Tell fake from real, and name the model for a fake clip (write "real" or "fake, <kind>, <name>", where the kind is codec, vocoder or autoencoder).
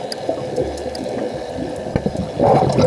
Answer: real